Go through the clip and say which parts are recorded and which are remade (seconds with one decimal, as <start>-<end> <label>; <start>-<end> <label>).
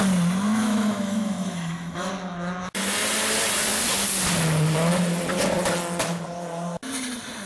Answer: 0.0-0.6 recorded; 0.6-2.1 remade; 2.1-7.5 recorded